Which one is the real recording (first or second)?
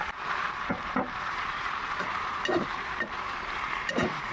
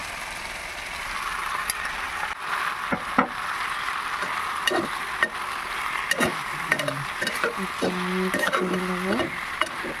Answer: second